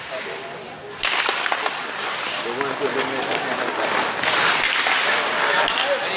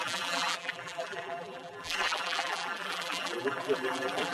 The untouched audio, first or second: first